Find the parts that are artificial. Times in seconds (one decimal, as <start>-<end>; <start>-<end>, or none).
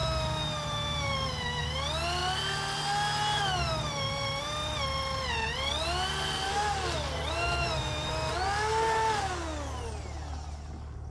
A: none